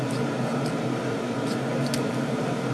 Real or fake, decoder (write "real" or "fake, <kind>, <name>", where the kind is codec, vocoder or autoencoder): fake, vocoder, BigVGAN v2